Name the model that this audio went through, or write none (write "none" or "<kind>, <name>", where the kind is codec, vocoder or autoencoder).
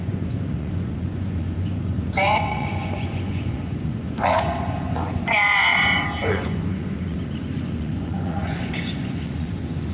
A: vocoder, Vocos